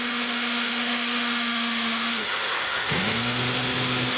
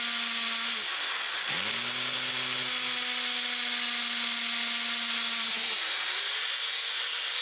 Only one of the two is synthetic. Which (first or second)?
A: first